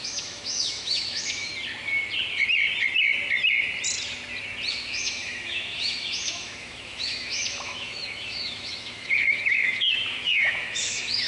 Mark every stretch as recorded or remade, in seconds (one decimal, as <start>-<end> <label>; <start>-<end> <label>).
0.0-1.5 remade; 1.5-4.7 recorded; 4.7-11.3 remade